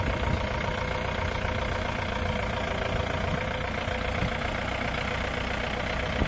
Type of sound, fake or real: real